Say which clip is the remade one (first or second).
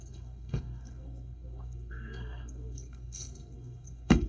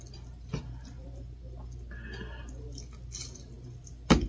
first